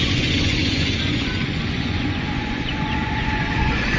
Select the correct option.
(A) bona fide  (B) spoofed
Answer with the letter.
B